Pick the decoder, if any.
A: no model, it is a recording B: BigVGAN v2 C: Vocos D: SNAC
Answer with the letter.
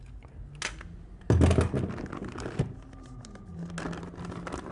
A